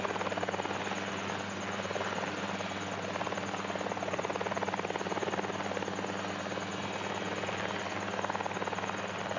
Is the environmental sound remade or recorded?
recorded